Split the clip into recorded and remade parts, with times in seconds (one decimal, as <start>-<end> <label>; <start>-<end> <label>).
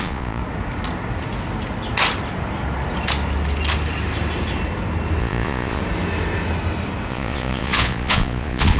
0.0-0.4 remade; 0.4-5.2 recorded; 5.2-5.8 remade; 5.8-7.1 recorded; 7.1-8.8 remade